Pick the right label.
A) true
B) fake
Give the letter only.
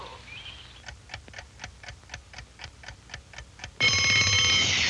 A